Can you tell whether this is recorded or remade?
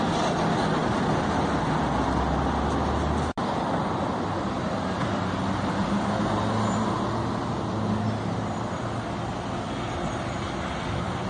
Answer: recorded